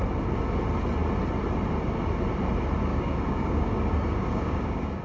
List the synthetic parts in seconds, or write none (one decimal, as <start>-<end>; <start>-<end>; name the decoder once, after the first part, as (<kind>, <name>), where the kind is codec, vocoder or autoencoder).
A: 2.9-5.0 (codec, DAC)